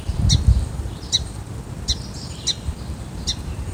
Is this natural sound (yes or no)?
no